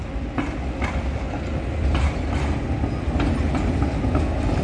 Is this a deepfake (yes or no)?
no